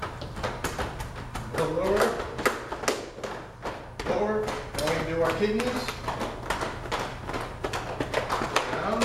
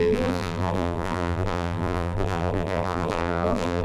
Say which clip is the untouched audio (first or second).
first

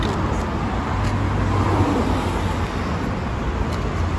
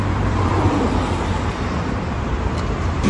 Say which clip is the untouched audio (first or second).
first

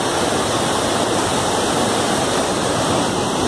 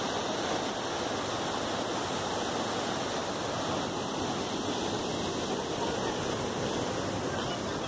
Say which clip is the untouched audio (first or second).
second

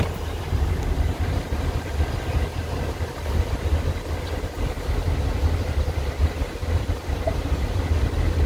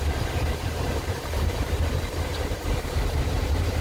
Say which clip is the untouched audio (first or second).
first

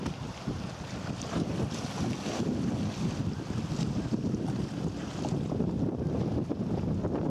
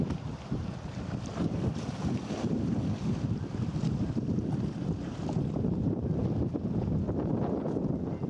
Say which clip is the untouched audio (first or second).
first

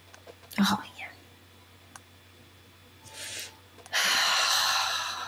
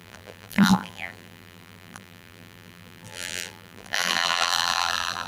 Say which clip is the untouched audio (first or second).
first